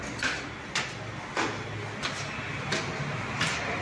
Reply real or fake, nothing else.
real